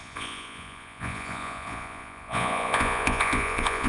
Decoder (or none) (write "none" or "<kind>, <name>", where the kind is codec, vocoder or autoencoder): vocoder, Vocos